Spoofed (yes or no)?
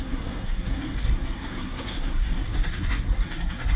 yes